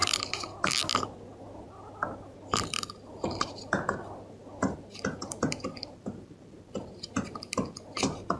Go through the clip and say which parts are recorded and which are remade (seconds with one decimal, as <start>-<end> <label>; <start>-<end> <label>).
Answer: 0.0-8.4 recorded